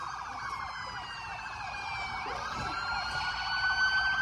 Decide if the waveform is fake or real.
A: real